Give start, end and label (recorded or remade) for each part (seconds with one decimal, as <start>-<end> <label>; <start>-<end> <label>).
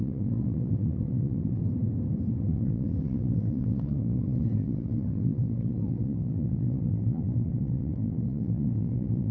0.0-1.6 remade; 1.6-2.3 recorded; 2.3-9.3 remade